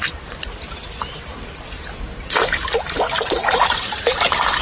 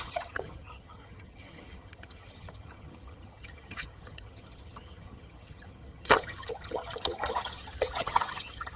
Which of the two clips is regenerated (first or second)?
second